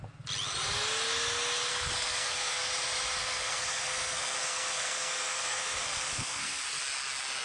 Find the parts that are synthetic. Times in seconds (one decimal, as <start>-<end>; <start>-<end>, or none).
1.7-2.7; 3.2-6.6

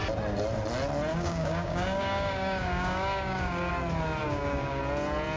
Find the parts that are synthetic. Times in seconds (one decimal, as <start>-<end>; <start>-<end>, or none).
1.1-3.7; 4.2-4.8

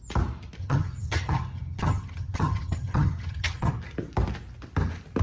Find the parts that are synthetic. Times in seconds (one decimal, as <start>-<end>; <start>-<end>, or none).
0.6-3.7

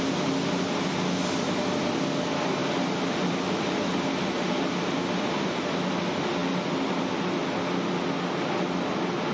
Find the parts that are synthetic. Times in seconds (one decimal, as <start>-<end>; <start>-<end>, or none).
none

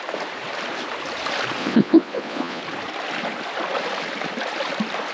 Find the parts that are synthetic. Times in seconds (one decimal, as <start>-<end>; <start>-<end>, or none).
1.6-2.6

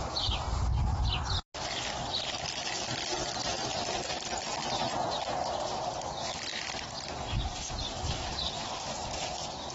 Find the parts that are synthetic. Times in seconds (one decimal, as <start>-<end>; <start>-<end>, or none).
0.0-0.9; 3.9-4.6; 5.1-6.5

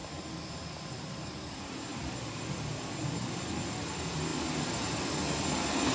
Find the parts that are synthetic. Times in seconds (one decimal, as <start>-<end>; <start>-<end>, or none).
none

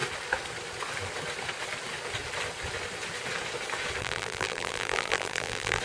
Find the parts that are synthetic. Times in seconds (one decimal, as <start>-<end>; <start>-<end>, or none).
4.0-5.8